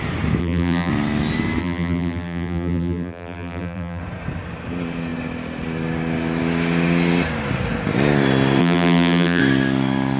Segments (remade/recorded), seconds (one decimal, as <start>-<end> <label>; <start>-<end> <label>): 0.0-0.4 recorded; 0.4-0.9 remade; 0.9-1.6 recorded; 1.6-4.0 remade; 4.0-8.6 recorded; 8.6-9.4 remade; 9.4-10.2 recorded

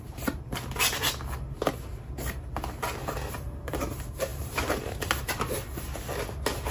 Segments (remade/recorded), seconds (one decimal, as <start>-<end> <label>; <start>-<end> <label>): 0.0-3.0 recorded; 3.0-3.8 remade; 3.8-4.3 recorded; 4.3-5.1 remade; 5.1-6.7 recorded

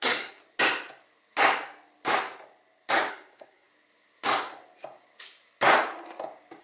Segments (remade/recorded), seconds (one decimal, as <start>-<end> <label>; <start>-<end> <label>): 0.0-0.4 remade; 0.4-3.1 recorded; 3.1-3.7 remade; 3.7-6.6 recorded

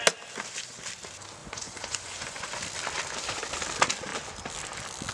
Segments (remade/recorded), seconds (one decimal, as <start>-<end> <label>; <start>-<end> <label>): 0.0-1.4 recorded; 1.4-2.6 remade; 2.6-5.1 recorded

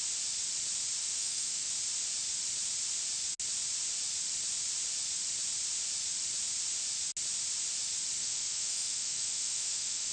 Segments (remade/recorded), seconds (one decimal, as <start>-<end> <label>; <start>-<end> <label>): 0.0-1.0 recorded; 1.0-1.7 remade; 1.7-8.2 recorded; 8.2-10.1 remade

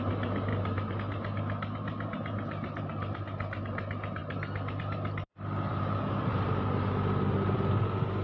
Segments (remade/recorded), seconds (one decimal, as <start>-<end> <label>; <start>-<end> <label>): 0.0-0.5 recorded; 0.5-1.0 remade; 1.0-5.7 recorded; 5.7-6.3 remade; 6.3-8.2 recorded

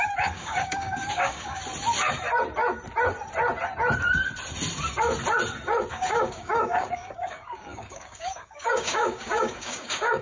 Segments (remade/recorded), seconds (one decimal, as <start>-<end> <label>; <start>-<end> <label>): 0.0-1.6 remade; 1.6-5.9 recorded; 5.9-10.2 remade

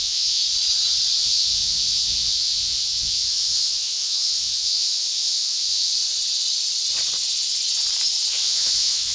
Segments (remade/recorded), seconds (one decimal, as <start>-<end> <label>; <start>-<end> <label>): 0.0-0.4 remade; 0.4-1.2 recorded; 1.2-5.9 remade; 5.9-8.3 recorded; 8.3-9.1 remade